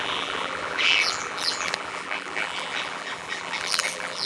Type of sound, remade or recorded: remade